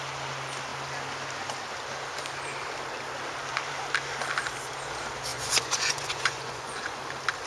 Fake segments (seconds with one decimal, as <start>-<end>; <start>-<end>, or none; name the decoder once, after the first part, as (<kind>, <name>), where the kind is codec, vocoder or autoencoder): 5.3-7.0 (vocoder, Vocos)